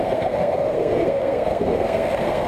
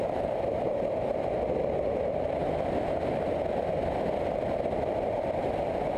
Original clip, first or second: second